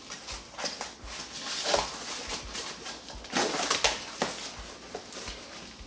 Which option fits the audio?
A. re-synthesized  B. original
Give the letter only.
B